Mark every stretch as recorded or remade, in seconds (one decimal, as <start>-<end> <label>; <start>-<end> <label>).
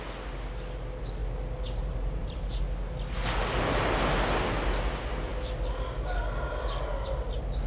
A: 0.0-7.7 recorded